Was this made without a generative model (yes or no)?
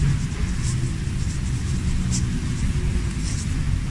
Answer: yes